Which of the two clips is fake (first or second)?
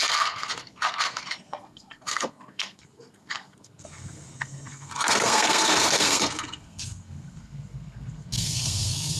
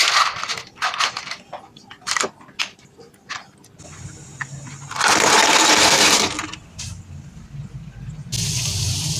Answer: first